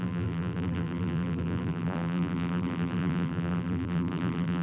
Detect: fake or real fake